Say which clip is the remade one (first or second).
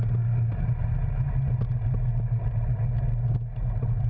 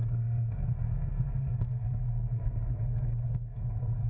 second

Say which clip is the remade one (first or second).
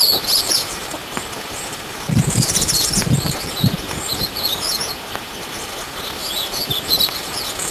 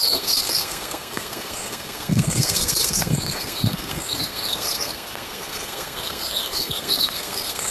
second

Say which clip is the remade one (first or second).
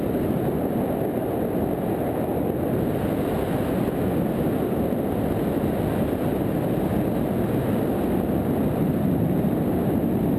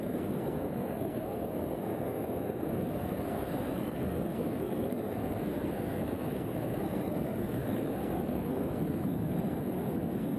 second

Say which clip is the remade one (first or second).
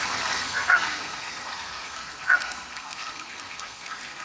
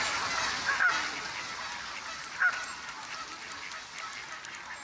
first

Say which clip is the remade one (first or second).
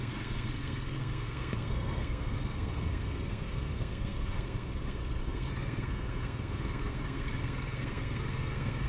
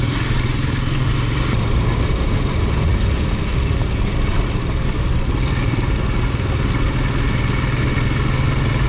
first